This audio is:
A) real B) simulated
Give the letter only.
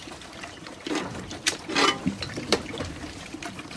B